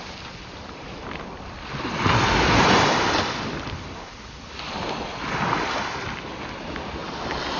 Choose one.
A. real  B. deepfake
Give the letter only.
A